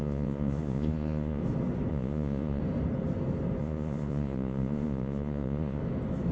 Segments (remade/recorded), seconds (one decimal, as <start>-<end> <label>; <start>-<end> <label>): 0.0-1.4 remade; 1.4-1.9 recorded; 1.9-2.6 remade; 2.6-3.6 recorded; 3.6-5.8 remade; 5.8-6.3 recorded